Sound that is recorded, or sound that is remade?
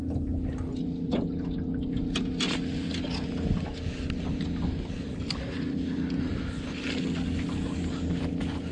recorded